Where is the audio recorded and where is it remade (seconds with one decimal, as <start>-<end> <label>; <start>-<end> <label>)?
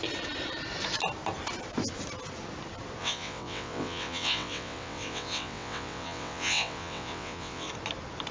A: 0.0-3.0 recorded; 3.0-7.7 remade; 7.7-8.3 recorded